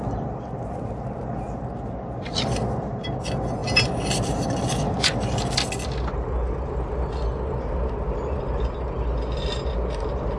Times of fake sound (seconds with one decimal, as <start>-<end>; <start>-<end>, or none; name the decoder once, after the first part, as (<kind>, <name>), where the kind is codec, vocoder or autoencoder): none